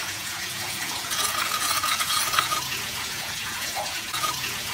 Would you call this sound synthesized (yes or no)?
yes